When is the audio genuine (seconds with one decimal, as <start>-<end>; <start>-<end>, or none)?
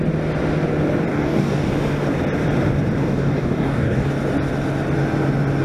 0.0-1.1; 1.7-3.0; 4.1-5.6